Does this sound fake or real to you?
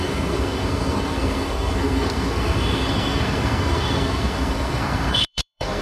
fake